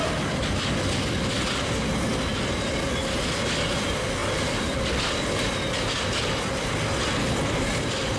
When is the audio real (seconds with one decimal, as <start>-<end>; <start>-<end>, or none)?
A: 0.0-8.2